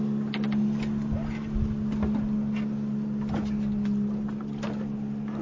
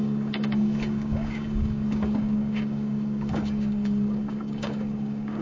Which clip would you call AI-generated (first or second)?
second